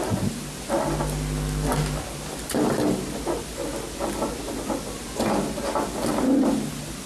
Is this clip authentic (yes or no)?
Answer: yes